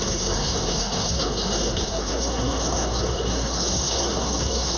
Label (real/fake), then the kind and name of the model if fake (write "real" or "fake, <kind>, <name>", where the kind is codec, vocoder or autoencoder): fake, codec, SNAC